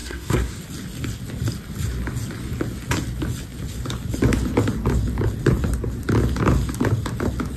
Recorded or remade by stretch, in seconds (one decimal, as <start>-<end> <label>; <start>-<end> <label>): 0.0-0.6 remade; 0.6-7.6 recorded